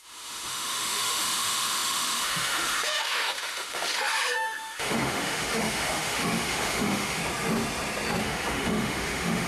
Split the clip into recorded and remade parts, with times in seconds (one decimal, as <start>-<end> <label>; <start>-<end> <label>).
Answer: 0.0-7.2 remade; 7.2-8.2 recorded; 8.2-9.5 remade